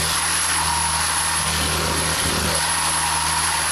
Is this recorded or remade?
recorded